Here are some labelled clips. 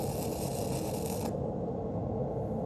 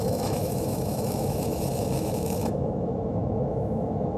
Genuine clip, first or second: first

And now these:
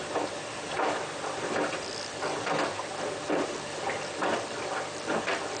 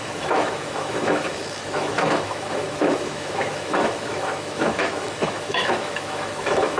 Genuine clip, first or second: first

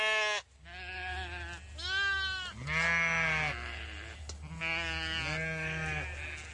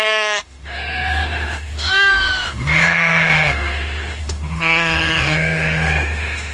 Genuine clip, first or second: first